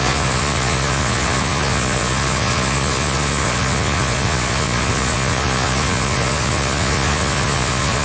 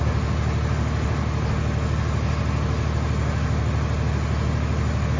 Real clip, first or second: second